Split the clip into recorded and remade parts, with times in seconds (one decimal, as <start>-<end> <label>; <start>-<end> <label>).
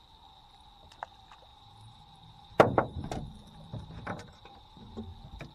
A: 0.0-1.5 recorded; 1.5-3.1 remade; 3.1-3.7 recorded; 3.7-5.0 remade; 5.0-5.5 recorded